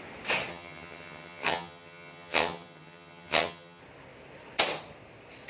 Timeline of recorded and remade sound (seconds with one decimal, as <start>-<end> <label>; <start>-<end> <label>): 0.0-0.5 recorded; 0.5-3.8 remade; 3.8-5.5 recorded